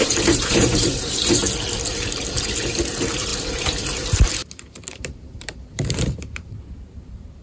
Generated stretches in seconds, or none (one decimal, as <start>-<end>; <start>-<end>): 0.0-1.4; 1.9-7.4